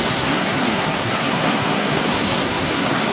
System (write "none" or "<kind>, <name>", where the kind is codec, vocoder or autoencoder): codec, SNAC